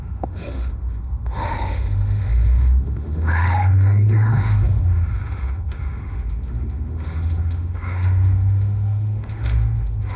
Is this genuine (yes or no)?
no